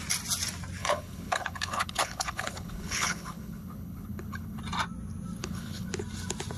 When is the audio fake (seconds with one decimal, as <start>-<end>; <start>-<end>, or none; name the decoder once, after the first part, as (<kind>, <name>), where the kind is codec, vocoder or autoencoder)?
0.8-4.6 (codec, HILCodec); 5.4-5.9